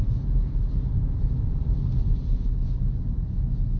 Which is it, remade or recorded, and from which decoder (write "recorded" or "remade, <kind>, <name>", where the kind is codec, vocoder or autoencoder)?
recorded